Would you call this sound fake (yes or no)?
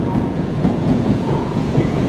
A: yes